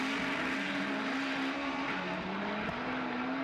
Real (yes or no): yes